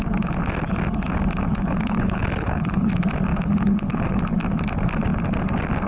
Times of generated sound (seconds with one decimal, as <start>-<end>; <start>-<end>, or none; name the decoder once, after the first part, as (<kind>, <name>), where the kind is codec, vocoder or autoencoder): 1.5-2.9 (codec, HILCodec); 3.3-4.2